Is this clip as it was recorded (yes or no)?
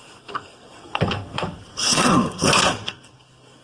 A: no